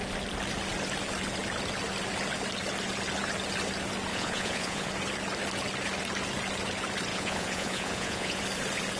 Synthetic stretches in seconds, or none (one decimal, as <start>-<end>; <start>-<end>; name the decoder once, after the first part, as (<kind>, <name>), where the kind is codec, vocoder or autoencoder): 4.1-4.9 (vocoder, Vocos); 7.1-8.4